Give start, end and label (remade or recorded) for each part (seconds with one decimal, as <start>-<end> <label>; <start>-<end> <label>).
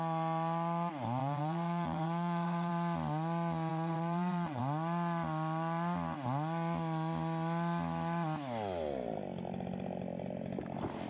0.0-1.2 recorded; 1.2-2.7 remade; 2.7-3.7 recorded; 3.7-4.6 remade; 4.6-11.1 recorded